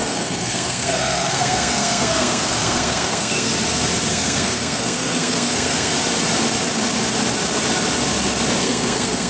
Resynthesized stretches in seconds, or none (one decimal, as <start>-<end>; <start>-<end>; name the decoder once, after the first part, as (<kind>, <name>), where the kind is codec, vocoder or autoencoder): 0.0-3.5 (codec, SNAC); 4.1-5.9; 8.6-9.3